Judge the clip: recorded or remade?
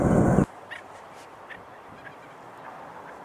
recorded